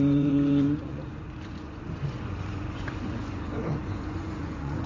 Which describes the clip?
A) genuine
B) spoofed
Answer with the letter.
B